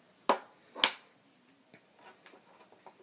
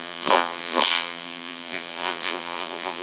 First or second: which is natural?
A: first